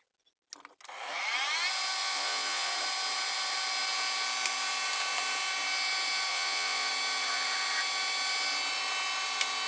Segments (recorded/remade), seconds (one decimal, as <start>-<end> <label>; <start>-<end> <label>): 0.0-2.0 recorded; 2.0-2.7 remade; 2.7-6.3 recorded; 6.3-6.9 remade; 6.9-9.7 recorded